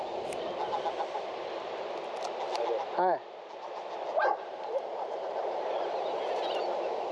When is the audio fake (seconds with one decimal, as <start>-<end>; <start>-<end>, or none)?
4.1-6.2